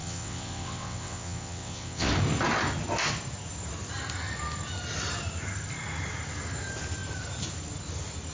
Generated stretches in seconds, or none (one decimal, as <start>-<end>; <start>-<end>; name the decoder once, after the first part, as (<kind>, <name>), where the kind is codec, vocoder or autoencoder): 0.0-2.1 (vocoder, WaveNeXt)